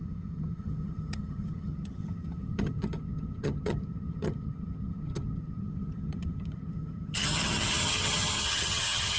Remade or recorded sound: remade